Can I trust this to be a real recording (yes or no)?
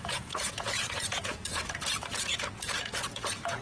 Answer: no